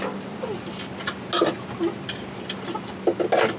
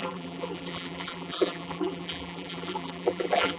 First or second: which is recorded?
first